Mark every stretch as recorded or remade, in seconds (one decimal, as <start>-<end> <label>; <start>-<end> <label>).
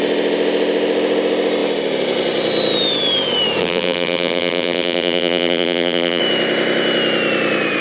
0.0-3.6 recorded; 3.6-6.2 remade; 6.2-7.8 recorded